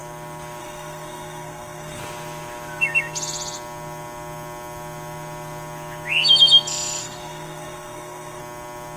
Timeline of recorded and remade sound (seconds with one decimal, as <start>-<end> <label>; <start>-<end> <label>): 0.0-0.6 recorded; 0.6-2.0 remade; 2.0-7.0 recorded; 7.0-8.4 remade; 8.4-9.0 recorded

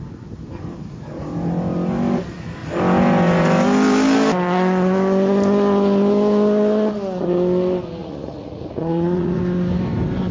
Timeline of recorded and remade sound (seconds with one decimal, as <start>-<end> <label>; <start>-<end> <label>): 0.0-8.0 recorded; 8.0-9.4 remade; 9.4-10.3 recorded

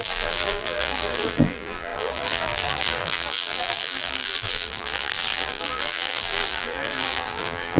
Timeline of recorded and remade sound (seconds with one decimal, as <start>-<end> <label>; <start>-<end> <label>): 0.0-7.8 remade

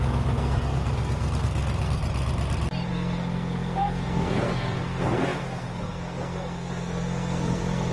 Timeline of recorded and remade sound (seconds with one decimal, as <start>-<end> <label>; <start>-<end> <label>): 0.0-2.0 remade; 2.0-2.9 recorded; 2.9-7.9 remade

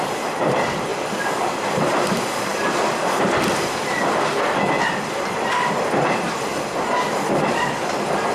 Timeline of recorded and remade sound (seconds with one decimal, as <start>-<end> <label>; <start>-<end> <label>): 0.0-0.9 remade; 0.9-1.5 recorded; 1.5-6.5 remade; 6.5-7.5 recorded; 7.5-8.3 remade